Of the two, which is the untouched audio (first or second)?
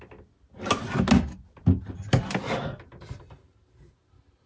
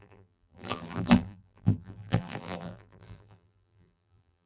first